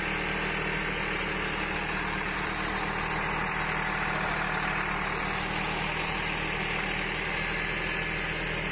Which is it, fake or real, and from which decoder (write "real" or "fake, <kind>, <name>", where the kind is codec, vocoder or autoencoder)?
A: real